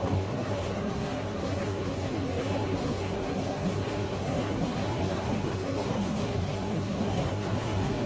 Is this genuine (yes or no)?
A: no